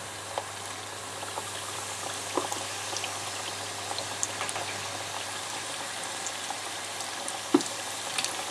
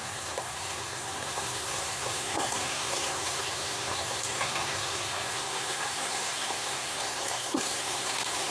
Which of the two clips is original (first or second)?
first